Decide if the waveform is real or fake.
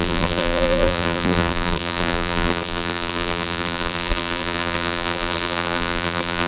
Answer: fake